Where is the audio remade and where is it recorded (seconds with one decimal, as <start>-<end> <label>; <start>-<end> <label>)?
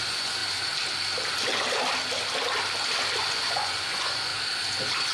0.0-0.4 remade; 0.4-3.2 recorded; 3.2-4.3 remade; 4.3-5.1 recorded